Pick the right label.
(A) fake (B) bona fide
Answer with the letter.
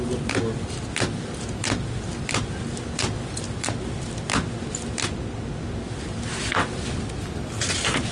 B